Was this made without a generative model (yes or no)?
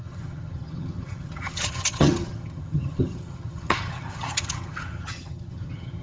no